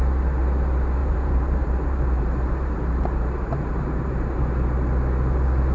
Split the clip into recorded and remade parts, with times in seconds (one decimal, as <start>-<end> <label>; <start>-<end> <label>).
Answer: 0.0-1.0 recorded; 1.0-4.4 remade; 4.4-5.7 recorded